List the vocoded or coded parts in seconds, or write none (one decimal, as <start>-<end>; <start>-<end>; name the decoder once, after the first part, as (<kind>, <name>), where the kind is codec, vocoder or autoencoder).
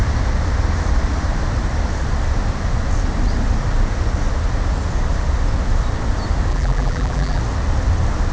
6.5-7.4 (vocoder, BigVGAN v2)